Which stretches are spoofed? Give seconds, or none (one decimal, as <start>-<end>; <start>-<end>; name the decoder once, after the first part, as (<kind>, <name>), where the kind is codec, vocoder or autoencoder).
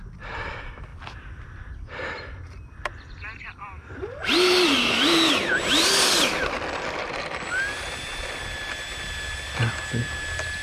4.2-5.5 (vocoder, BigVGAN v2)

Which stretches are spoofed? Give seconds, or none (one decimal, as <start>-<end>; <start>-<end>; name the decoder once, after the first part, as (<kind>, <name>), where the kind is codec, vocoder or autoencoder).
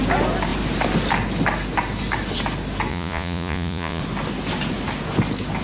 2.9-4.0 (vocoder, Vocos)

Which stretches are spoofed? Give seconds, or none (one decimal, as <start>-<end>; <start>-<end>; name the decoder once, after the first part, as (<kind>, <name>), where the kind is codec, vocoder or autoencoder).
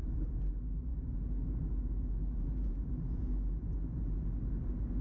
none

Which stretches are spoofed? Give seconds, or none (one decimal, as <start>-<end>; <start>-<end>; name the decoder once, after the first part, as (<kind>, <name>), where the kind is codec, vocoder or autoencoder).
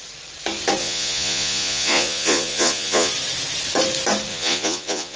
0.8-3.1 (vocoder, Vocos); 4.3-5.2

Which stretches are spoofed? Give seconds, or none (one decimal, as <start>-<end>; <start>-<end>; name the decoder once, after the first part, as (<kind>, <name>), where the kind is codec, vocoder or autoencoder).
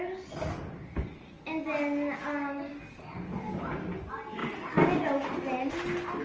2.7-3.6 (codec, DAC)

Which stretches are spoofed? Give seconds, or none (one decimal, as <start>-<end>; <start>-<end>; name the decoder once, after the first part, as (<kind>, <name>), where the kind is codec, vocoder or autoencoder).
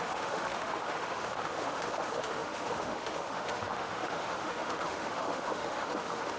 0.0-6.4 (autoencoder, DAC-VAE)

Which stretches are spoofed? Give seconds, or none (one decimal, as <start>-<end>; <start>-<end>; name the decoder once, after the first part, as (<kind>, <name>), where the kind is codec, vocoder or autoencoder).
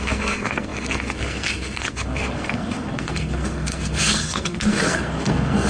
0.0-5.7 (codec, SNAC)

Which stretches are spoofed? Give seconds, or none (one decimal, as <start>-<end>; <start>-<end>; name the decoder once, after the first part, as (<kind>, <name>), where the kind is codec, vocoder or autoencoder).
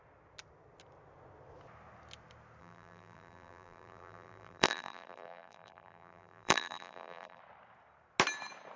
2.6-7.4 (vocoder, BigVGAN v2)